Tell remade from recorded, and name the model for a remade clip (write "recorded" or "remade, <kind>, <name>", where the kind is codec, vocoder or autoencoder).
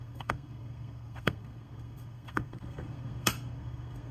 remade, codec, SNAC